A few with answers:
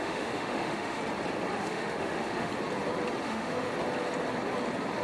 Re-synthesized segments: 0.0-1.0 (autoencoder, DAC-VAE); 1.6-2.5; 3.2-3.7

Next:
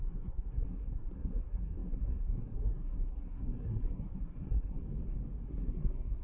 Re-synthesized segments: 0.0-4.8 (codec, SNAC); 5.5-6.2

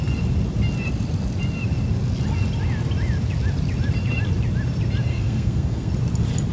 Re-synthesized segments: 5.1-5.9 (codec, SNAC)

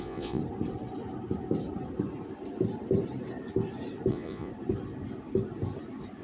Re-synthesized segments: 0.0-0.4 (vocoder, Vocos); 4.1-4.5

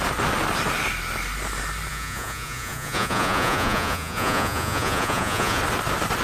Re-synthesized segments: 1.9-5.6 (vocoder, Vocos)

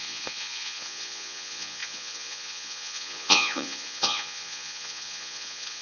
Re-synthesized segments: 0.0-5.8 (vocoder, Vocos)